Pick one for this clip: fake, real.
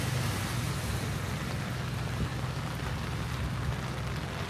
real